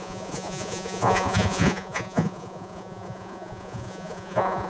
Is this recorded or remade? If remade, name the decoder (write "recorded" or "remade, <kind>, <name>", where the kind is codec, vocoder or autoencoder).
remade, vocoder, Vocos